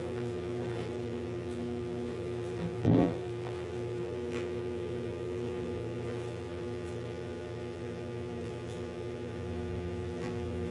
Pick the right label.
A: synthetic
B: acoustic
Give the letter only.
A